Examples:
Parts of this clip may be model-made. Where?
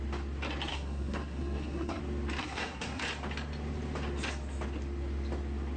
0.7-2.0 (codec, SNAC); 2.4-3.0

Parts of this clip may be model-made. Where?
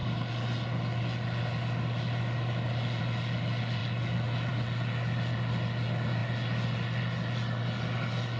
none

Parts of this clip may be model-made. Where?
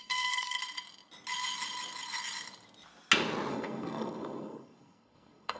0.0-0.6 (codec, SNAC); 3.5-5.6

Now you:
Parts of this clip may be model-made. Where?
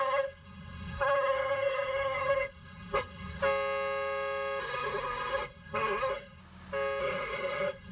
0.0-3.4 (codec, SNAC); 4.6-6.4; 7.0-7.9